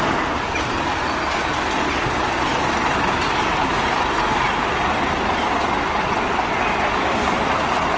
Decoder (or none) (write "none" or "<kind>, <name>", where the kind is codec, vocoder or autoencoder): none